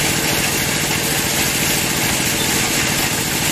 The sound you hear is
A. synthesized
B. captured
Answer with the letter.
B